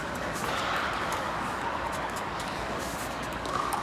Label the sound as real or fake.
fake